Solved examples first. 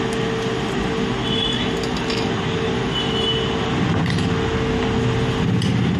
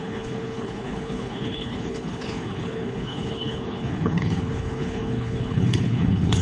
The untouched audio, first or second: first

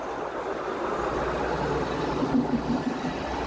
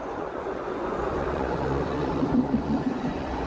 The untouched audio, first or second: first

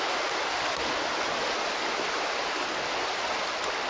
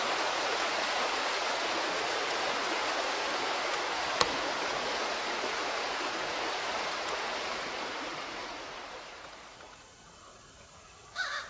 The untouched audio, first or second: first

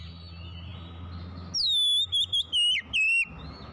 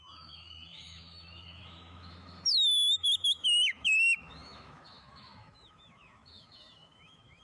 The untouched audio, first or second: first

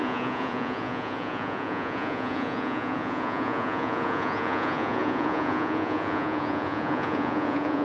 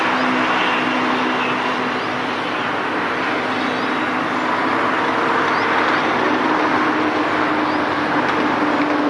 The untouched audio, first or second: second